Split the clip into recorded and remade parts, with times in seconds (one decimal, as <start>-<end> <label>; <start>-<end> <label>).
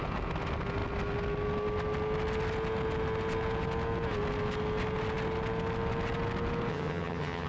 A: 0.0-6.7 recorded; 6.7-7.5 remade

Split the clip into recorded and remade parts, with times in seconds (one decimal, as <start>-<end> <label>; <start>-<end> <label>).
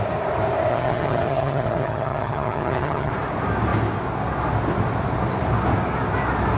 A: 0.0-0.7 recorded; 0.7-3.1 remade; 3.1-6.6 recorded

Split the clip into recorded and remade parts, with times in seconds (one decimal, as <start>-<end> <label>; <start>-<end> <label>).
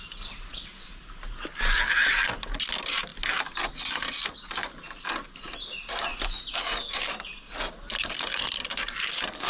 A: 0.0-9.5 recorded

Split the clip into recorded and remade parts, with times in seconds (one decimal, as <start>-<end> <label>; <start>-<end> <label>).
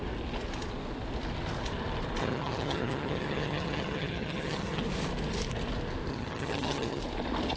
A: 0.0-2.2 recorded; 2.2-4.8 remade; 4.8-6.1 recorded; 6.1-7.0 remade; 7.0-7.6 recorded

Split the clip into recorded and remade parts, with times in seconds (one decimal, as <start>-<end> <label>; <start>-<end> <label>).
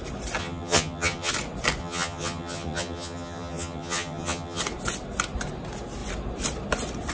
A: 0.0-0.4 recorded; 0.4-1.3 remade; 1.3-1.8 recorded; 1.8-4.6 remade; 4.6-7.1 recorded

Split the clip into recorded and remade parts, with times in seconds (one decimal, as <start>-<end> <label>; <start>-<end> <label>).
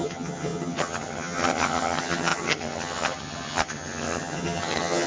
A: 0.0-5.1 remade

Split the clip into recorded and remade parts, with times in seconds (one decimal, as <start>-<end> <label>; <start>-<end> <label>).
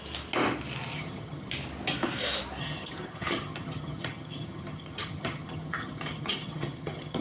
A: 0.0-0.9 recorded; 0.9-1.5 remade; 1.5-2.6 recorded; 2.6-7.2 remade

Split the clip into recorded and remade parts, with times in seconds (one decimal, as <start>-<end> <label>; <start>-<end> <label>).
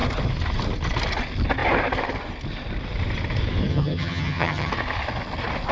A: 0.0-3.7 recorded; 3.7-4.7 remade; 4.7-5.7 recorded